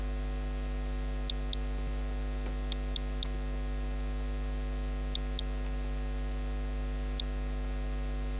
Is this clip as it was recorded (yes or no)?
yes